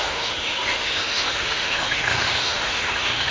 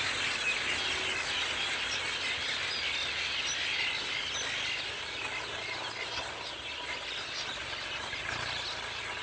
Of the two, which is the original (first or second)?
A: second